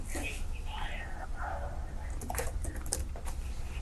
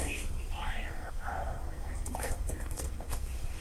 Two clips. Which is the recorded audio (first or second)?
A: first